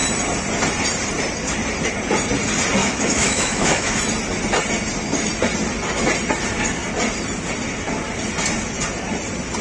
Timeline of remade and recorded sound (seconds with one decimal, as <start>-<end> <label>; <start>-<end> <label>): 0.0-2.8 recorded; 2.8-4.0 remade; 4.0-9.6 recorded